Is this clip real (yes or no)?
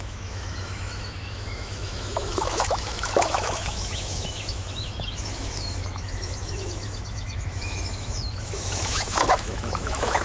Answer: no